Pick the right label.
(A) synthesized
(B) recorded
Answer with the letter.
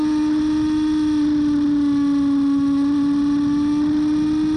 B